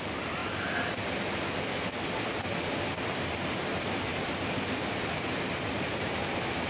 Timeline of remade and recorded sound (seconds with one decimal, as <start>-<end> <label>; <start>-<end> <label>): 0.0-6.7 recorded